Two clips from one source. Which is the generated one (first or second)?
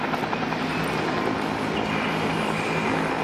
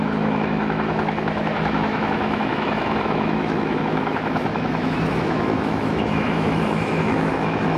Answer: second